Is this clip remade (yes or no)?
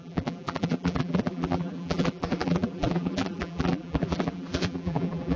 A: yes